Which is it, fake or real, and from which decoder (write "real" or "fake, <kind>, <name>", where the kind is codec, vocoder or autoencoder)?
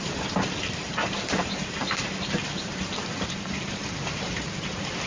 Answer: fake, vocoder, BigVGAN v2